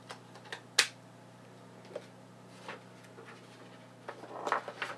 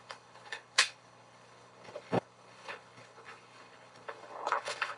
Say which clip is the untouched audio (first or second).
first